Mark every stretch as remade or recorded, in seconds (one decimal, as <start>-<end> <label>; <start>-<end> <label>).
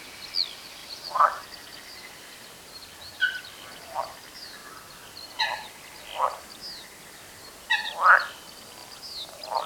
0.0-0.8 recorded; 0.8-3.4 remade; 3.4-9.7 recorded